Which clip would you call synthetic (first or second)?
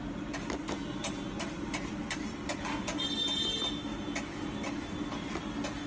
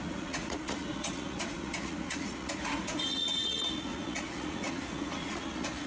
second